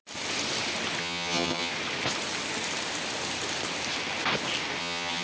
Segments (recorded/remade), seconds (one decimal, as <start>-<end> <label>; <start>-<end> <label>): 0.0-1.0 recorded; 1.0-1.7 remade; 1.7-4.8 recorded; 4.8-5.2 remade